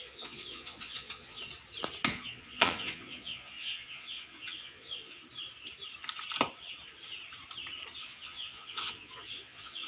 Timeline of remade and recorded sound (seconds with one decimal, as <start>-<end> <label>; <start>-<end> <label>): 0.0-1.4 remade; 1.4-2.1 recorded; 2.1-5.2 remade; 5.2-8.0 recorded; 8.0-9.9 remade